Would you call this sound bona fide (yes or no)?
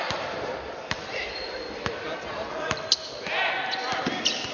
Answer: yes